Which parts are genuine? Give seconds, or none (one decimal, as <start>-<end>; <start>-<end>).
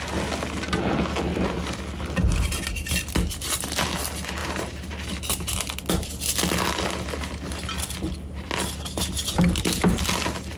0.0-1.3; 1.8-4.4; 4.9-10.6